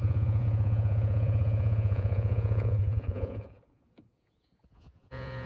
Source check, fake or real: fake